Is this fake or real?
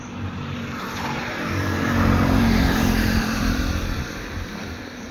fake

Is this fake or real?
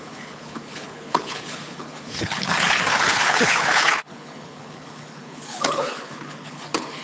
fake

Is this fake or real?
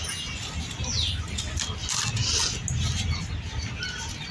real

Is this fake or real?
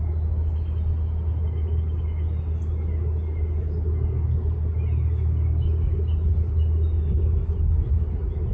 real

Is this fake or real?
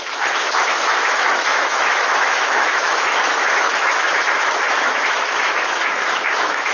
fake